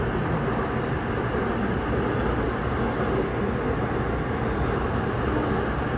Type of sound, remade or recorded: recorded